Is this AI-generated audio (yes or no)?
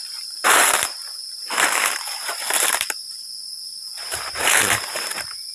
yes